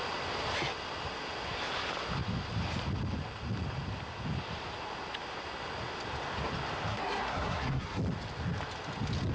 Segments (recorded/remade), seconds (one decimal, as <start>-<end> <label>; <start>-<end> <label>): 0.0-6.9 recorded; 6.9-8.0 remade; 8.0-9.3 recorded

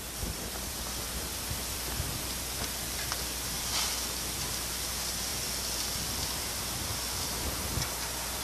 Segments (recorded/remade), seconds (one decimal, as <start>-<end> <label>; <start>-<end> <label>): 0.0-8.4 recorded

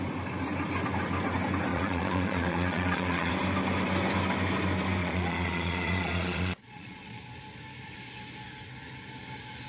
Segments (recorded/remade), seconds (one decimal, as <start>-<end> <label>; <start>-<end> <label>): 0.0-1.7 recorded; 1.7-3.3 remade; 3.3-5.0 recorded; 5.0-7.2 remade; 7.2-9.7 recorded

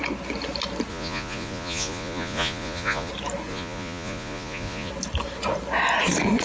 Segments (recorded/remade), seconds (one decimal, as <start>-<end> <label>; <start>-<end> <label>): 0.0-0.9 recorded; 0.9-3.1 remade; 3.1-3.5 recorded; 3.5-4.9 remade; 4.9-6.4 recorded